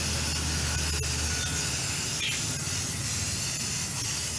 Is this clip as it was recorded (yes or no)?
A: yes